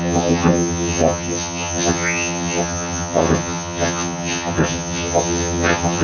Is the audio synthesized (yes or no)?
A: yes